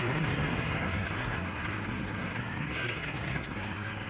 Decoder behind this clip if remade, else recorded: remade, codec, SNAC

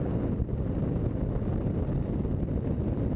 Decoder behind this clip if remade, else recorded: recorded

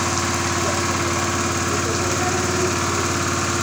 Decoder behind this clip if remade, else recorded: recorded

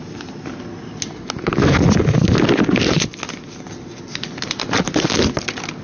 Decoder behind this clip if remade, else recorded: recorded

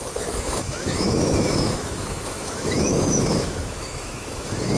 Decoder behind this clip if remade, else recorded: remade, autoencoder, DAC-VAE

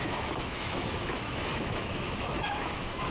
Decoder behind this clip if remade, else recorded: remade, autoencoder, DAC-VAE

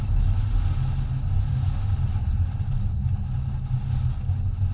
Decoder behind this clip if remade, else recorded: recorded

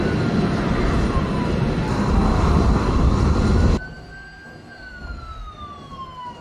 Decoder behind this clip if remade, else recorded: recorded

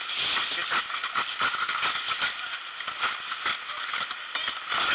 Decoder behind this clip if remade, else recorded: recorded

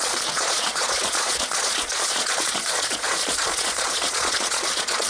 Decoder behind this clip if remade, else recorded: remade, vocoder, Vocos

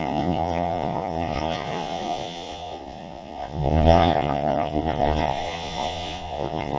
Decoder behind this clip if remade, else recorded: remade, vocoder, Vocos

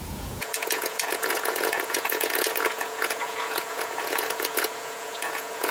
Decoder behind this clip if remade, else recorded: remade, vocoder, Vocos